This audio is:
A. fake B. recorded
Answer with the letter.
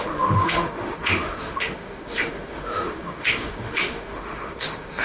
A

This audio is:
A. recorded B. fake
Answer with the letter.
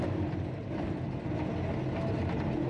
A